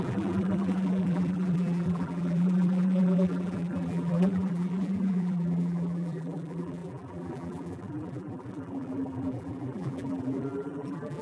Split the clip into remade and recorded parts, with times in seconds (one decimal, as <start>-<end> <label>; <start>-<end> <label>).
0.0-11.2 remade

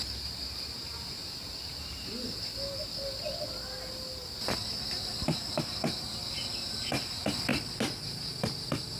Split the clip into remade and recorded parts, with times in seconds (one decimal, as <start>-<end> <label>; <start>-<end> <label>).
0.0-1.2 remade; 1.2-5.2 recorded; 5.2-7.5 remade; 7.5-8.0 recorded; 8.0-9.0 remade